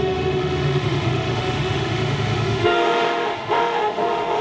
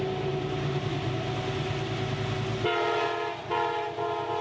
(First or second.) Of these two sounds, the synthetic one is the first